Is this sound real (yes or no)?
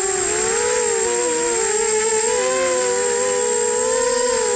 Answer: yes